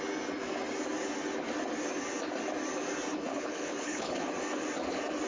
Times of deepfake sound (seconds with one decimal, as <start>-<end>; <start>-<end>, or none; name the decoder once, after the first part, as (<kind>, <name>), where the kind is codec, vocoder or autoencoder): 3.3-4.3 (codec, HILCodec)

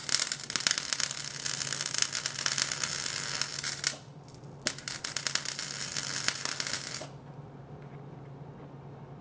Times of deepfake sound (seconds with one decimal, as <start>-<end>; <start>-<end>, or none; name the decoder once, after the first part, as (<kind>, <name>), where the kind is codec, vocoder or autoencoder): none

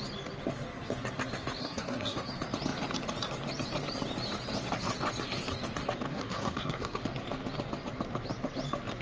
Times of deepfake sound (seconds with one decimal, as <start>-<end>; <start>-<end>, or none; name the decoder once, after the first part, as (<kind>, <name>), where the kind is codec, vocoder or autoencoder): 1.6-2.3 (codec, SNAC); 6.1-7.0